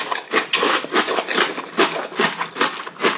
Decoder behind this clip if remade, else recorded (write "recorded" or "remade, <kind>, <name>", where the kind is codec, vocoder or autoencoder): recorded